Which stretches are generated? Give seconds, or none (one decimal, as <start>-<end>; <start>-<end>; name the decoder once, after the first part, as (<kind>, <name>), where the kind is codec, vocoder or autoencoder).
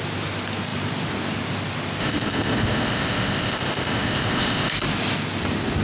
2.0-4.7 (codec, ZipCodec)